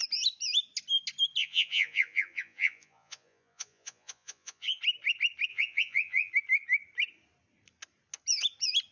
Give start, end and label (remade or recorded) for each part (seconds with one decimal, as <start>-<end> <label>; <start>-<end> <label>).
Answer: 0.0-1.4 recorded; 1.4-4.8 remade; 4.8-5.5 recorded; 5.5-6.3 remade; 6.3-8.9 recorded